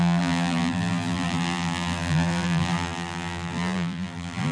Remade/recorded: remade